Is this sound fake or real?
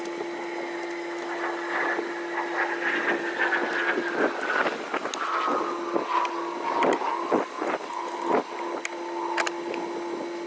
real